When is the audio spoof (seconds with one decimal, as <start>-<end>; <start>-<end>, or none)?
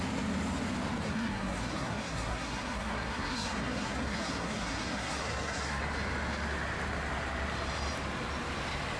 1.0-5.8